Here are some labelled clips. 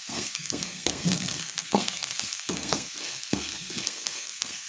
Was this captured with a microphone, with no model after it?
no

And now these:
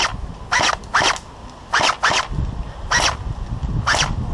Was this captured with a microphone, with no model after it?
yes